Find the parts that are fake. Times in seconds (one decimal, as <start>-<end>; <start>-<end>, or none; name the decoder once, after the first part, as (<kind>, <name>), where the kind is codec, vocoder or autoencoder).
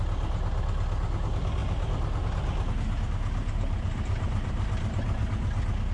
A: 3.4-5.3 (vocoder, BigVGAN v2)